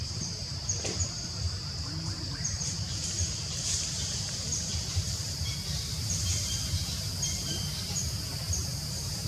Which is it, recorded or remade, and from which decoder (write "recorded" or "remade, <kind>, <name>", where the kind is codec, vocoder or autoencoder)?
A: remade, vocoder, BigVGAN v2